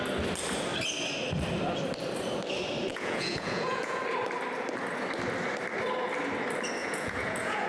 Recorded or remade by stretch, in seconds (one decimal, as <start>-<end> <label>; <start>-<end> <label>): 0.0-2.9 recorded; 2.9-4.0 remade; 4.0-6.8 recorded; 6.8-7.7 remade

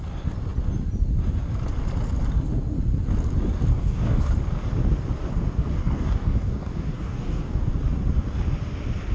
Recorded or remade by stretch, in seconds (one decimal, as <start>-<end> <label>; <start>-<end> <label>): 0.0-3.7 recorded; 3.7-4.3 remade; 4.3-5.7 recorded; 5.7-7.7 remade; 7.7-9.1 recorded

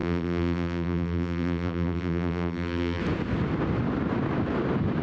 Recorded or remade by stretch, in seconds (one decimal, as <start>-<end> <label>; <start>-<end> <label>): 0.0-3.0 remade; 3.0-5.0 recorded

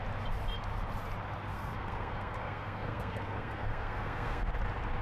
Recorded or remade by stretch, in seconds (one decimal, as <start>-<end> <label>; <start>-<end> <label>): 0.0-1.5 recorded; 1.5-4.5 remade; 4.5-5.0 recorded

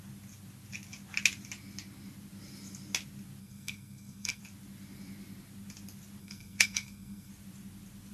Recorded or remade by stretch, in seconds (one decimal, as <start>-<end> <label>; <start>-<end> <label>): 0.0-3.4 recorded; 3.4-4.4 remade; 4.4-6.2 recorded; 6.2-7.3 remade; 7.3-8.1 recorded